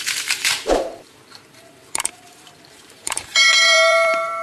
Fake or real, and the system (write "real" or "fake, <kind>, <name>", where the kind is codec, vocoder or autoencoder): fake, vocoder, BigVGAN v2